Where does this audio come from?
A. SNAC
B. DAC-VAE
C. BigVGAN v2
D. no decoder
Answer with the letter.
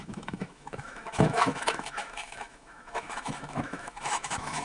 B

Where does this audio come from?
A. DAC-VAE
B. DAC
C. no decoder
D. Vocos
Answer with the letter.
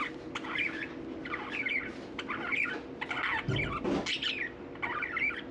C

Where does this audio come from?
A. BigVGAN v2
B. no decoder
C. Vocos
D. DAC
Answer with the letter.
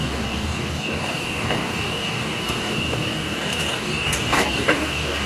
D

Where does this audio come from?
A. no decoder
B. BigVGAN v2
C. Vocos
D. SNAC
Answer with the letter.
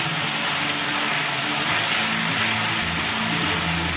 A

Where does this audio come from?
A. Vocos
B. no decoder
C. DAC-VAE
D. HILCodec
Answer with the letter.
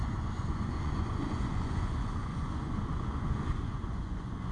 A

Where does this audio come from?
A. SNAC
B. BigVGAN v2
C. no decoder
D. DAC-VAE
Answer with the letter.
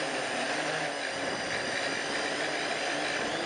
C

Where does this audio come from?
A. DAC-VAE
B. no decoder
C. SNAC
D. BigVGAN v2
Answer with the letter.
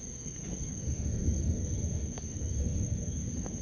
A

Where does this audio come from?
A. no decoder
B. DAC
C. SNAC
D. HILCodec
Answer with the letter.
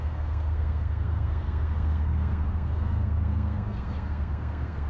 C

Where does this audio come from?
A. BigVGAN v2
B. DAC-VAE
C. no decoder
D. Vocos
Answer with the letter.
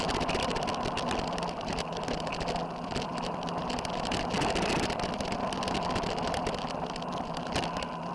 C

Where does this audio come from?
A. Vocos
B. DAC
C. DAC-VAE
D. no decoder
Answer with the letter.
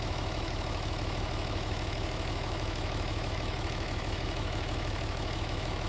C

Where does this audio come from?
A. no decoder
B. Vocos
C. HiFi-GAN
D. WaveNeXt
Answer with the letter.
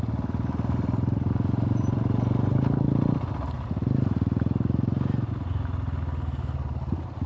A